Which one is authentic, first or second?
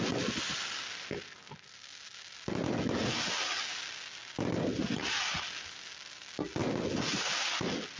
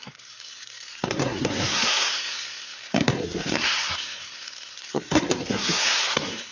first